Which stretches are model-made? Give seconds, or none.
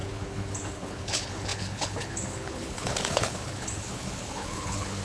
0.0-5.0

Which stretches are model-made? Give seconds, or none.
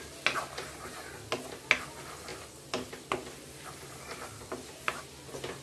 none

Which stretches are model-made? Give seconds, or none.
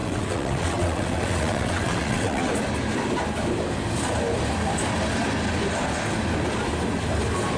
0.0-2.5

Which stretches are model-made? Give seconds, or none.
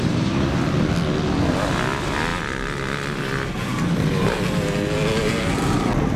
none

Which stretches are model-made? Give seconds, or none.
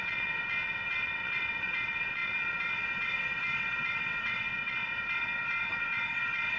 0.0-6.6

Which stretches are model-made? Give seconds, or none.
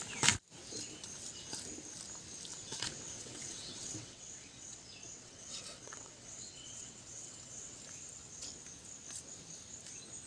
2.5-7.8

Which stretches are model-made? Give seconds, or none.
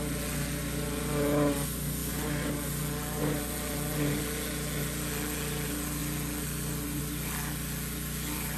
none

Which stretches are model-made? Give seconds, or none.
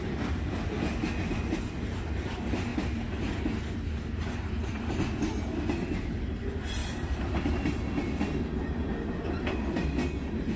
none